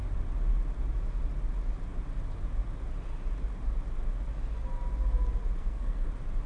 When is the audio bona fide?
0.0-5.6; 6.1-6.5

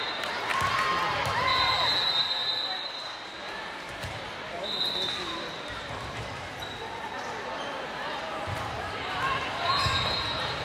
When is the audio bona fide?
0.5-2.0

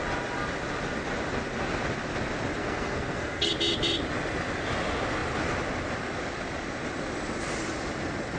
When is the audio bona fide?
0.0-2.6; 3.5-8.4